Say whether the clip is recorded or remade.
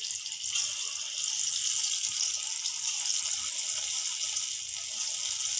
recorded